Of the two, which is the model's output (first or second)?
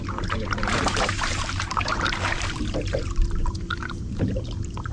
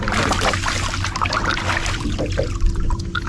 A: first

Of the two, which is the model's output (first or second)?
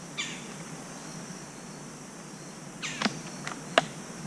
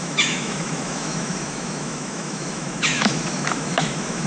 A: second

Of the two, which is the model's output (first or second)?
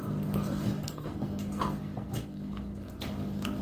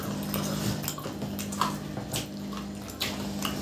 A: first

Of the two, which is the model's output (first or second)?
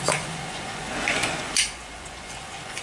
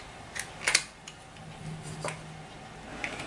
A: first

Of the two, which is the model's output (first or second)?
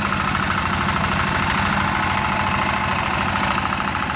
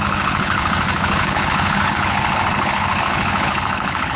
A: second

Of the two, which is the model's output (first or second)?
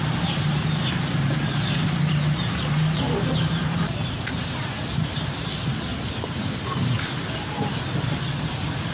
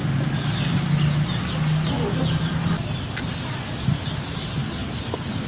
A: first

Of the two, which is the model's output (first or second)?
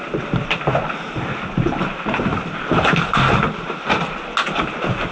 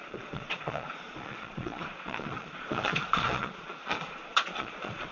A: second